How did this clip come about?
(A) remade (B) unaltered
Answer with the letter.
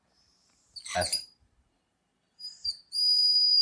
A